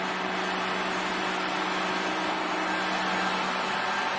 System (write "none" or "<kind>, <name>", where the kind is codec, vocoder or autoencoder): none